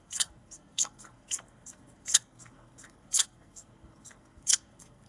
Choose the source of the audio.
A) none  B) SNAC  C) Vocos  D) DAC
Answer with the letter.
B